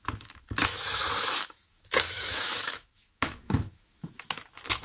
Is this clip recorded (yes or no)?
no